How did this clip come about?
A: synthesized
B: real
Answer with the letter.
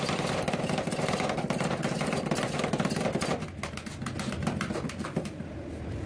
B